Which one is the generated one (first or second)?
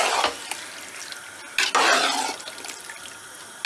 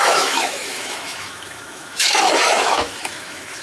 second